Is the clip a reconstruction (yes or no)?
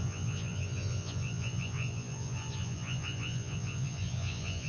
yes